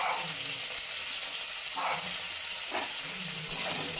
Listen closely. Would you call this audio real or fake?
real